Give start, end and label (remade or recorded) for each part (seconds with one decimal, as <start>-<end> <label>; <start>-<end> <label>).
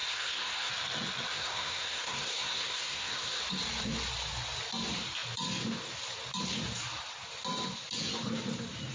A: 0.0-0.7 remade; 0.7-1.3 recorded; 1.3-3.4 remade; 3.4-8.9 recorded